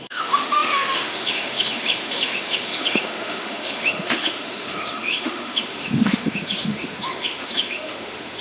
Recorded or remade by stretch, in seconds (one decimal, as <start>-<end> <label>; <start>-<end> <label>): 0.0-8.4 remade